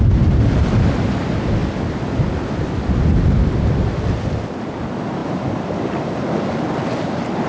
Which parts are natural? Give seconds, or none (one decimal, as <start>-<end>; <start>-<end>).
0.0-7.5